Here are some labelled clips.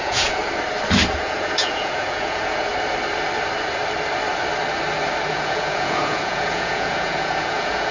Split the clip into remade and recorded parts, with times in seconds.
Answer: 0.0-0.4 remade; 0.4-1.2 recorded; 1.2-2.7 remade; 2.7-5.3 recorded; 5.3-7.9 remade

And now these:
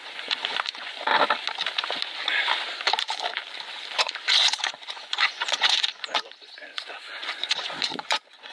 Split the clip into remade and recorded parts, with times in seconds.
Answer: 0.0-1.1 remade; 1.1-4.0 recorded; 4.0-8.5 remade

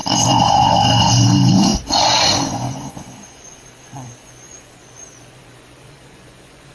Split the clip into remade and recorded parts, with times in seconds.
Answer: 0.0-6.7 remade

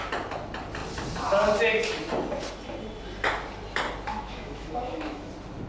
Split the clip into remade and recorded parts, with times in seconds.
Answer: 0.0-4.1 recorded; 4.1-5.3 remade; 5.3-5.7 recorded

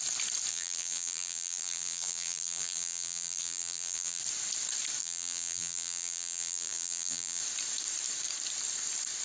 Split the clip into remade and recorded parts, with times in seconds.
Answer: 0.0-0.5 recorded; 0.5-4.2 remade; 4.2-5.0 recorded; 5.0-7.4 remade; 7.4-9.2 recorded

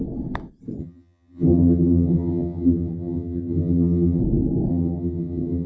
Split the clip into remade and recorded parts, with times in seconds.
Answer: 0.0-0.8 recorded; 0.8-4.2 remade; 4.2-4.7 recorded; 4.7-5.7 remade

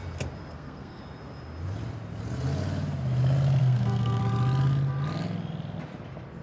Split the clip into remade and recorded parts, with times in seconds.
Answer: 0.0-0.5 recorded; 0.5-1.0 remade; 1.0-3.6 recorded; 3.6-4.2 remade; 4.2-6.4 recorded